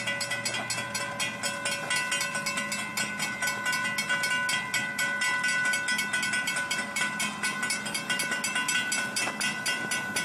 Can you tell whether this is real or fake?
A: real